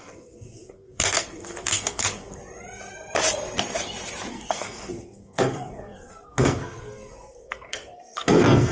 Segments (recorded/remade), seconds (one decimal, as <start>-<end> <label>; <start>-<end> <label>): 0.0-2.4 remade; 2.4-4.3 recorded; 4.3-8.7 remade